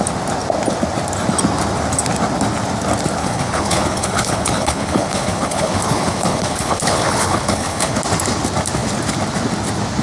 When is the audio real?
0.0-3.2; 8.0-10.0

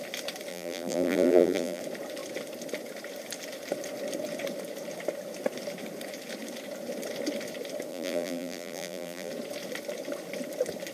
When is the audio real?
0.0-0.5; 1.8-7.9; 9.3-10.9

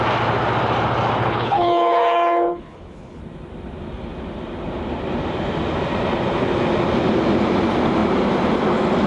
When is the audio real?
0.0-1.2; 3.2-9.1

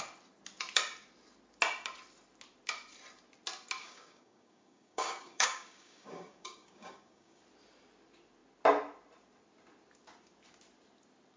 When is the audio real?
0.0-3.8; 7.4-11.4

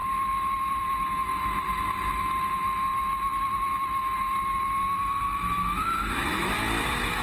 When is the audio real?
none

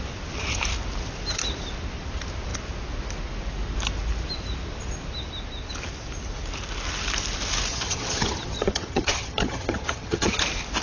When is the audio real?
0.0-7.7; 10.4-10.8

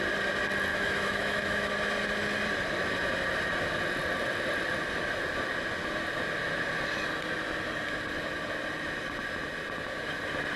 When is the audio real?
0.0-0.7; 1.7-10.6